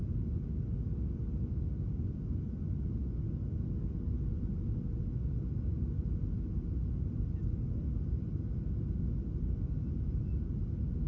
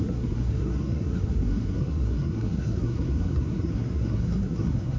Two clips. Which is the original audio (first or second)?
first